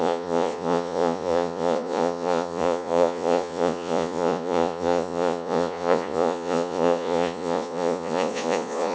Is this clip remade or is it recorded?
remade